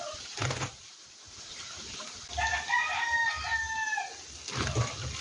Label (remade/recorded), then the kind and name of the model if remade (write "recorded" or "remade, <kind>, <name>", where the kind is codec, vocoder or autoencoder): recorded